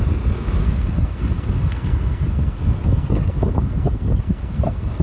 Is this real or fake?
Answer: fake